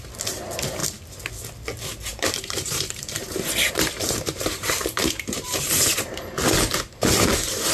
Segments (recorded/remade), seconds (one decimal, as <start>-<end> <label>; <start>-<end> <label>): 0.0-2.1 recorded; 2.1-6.3 remade; 6.3-7.7 recorded

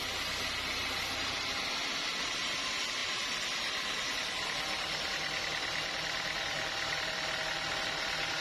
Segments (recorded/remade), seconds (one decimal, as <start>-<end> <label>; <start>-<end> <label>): 0.0-0.8 recorded; 0.8-1.7 remade; 1.7-3.0 recorded; 3.0-7.4 remade; 7.4-8.4 recorded

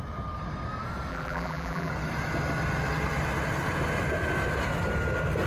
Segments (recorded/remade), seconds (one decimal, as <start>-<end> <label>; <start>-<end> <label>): 0.0-1.1 recorded; 1.1-1.9 remade; 1.9-5.5 recorded